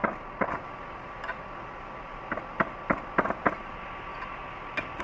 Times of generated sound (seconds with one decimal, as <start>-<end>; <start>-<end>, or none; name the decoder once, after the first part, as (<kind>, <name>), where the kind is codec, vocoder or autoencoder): none